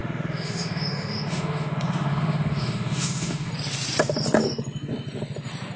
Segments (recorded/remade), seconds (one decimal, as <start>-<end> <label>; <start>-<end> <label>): 0.0-3.5 remade; 3.5-5.8 recorded